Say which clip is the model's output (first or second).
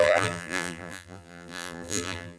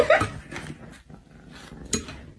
first